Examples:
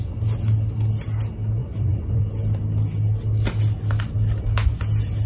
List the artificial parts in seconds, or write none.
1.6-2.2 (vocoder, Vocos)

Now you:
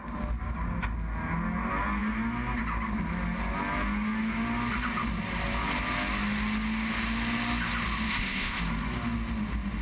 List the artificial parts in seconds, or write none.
8.1-8.6 (codec, ZipCodec)

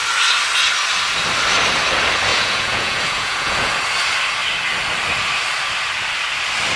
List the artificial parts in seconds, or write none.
2.3-3.7 (vocoder, Vocos)

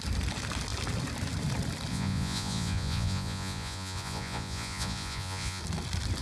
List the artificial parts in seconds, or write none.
1.9-5.6 (vocoder, Vocos)

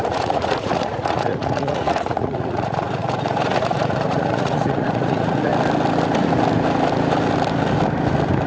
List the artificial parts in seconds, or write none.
0.0-5.5 (vocoder, Vocos)

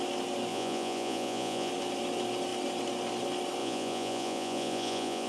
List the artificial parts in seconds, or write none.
0.5-1.7 (vocoder, Vocos); 3.6-5.3

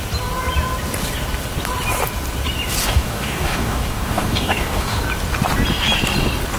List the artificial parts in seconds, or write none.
2.8-5.0 (codec, DAC)

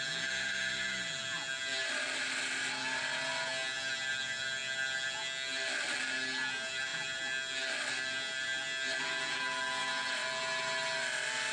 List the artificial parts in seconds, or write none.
none